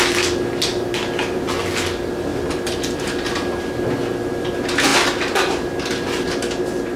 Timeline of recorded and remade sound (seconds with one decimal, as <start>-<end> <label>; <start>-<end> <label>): 0.0-7.0 recorded